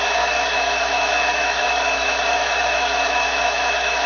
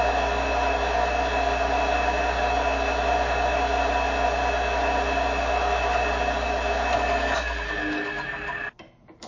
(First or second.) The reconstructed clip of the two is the first